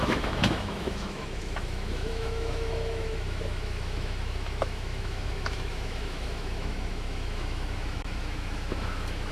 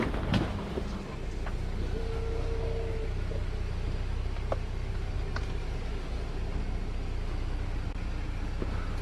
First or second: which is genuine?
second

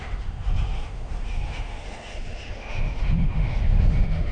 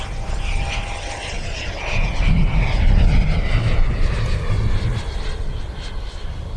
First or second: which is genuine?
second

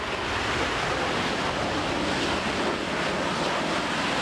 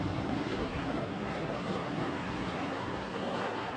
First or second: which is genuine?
first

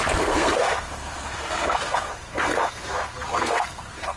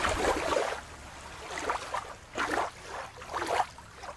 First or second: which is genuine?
second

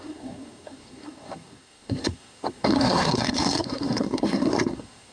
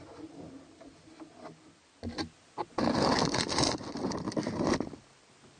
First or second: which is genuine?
second